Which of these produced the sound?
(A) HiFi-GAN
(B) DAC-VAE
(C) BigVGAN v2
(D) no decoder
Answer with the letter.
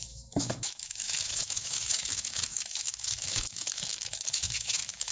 B